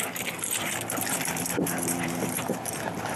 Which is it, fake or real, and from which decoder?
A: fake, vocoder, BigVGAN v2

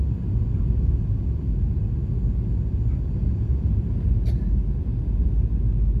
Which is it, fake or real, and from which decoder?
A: real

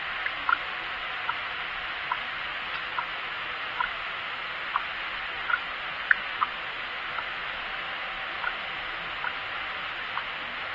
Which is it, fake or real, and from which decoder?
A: real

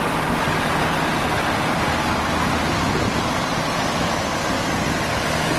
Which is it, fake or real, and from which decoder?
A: real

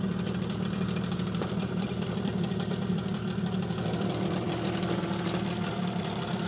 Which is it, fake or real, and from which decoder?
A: fake, vocoder, BigVGAN v2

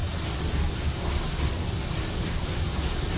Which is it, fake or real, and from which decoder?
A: real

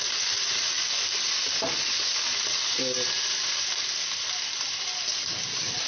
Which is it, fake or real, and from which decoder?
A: fake, vocoder, BigVGAN v2